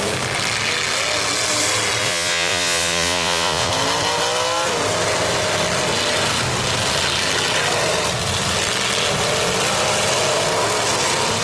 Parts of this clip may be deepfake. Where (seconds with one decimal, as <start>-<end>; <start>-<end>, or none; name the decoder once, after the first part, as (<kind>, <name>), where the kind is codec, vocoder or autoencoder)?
2.0-3.7 (vocoder, Vocos)